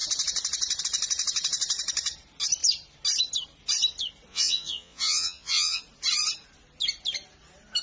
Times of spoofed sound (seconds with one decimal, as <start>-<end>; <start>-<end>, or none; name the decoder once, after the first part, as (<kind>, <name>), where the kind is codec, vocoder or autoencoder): 4.3-5.8 (vocoder, Vocos)